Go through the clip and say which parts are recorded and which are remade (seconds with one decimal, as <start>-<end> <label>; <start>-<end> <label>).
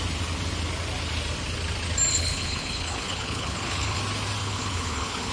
0.0-2.1 recorded; 2.1-4.0 remade; 4.0-4.4 recorded; 4.4-5.3 remade